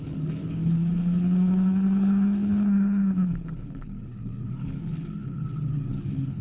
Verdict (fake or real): fake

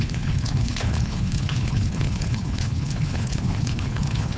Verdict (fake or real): fake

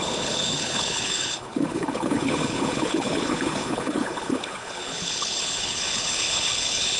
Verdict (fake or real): fake